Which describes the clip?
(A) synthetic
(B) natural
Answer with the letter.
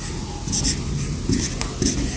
B